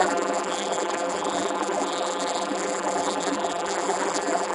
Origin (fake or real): fake